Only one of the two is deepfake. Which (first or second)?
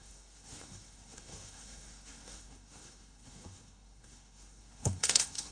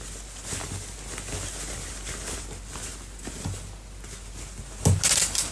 first